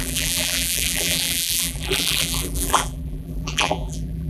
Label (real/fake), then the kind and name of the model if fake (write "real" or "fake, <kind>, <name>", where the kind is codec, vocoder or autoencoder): fake, vocoder, BigVGAN v2